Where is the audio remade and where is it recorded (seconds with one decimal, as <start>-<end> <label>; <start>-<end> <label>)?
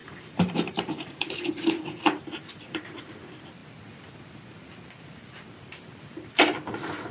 0.0-3.2 remade; 3.2-7.1 recorded